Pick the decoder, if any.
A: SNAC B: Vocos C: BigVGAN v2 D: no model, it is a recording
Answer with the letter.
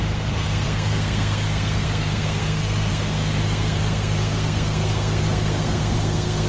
A